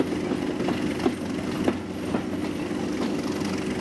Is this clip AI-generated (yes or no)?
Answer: no